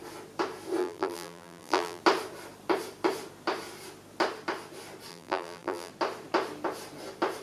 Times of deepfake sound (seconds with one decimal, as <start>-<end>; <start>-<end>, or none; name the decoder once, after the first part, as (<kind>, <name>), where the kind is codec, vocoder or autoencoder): 0.8-2.0 (vocoder, BigVGAN v2); 5.1-5.9